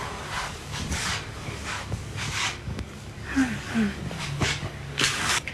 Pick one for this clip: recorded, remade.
remade